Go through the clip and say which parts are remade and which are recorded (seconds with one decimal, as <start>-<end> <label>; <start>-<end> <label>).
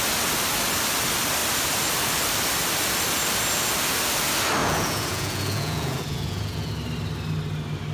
0.0-4.6 recorded; 4.6-6.7 remade; 6.7-7.9 recorded